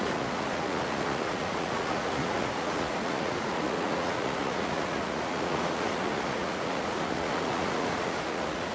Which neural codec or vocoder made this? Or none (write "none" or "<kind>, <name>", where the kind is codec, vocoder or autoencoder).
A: vocoder, Vocos